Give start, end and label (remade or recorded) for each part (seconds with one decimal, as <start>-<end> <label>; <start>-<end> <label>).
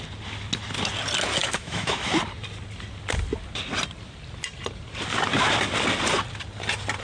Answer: 0.0-1.4 recorded; 1.4-2.1 remade; 2.1-7.0 recorded